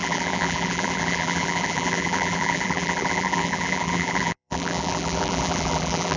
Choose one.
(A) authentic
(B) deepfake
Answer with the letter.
B